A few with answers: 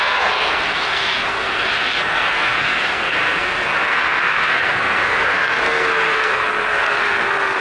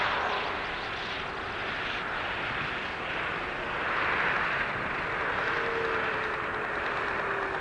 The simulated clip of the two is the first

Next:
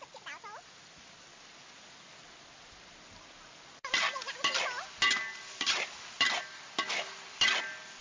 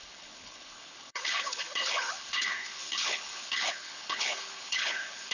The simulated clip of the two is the second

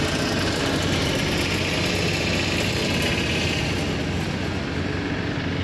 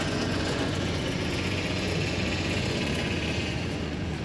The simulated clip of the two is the second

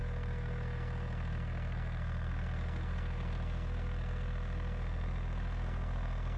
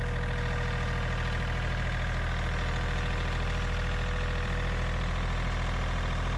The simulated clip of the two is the first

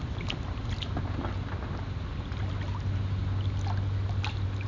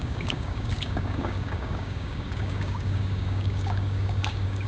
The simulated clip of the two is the second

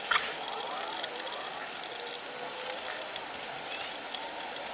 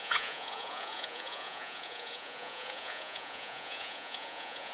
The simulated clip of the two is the second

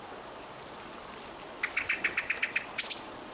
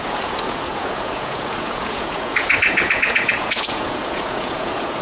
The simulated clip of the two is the second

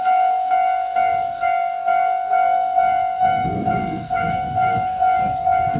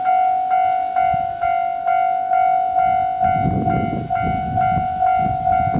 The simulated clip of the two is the first